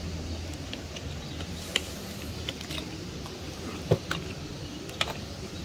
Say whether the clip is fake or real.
real